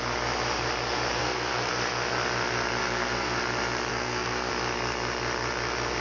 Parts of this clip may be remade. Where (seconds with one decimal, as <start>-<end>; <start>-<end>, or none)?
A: 1.2-1.7; 2.8-3.4; 3.9-4.5